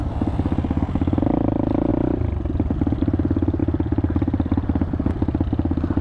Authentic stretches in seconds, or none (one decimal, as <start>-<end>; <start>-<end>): 0.0-1.9; 3.0-3.6; 5.1-6.0